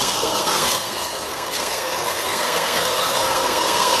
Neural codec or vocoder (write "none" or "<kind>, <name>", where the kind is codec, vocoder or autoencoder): codec, SNAC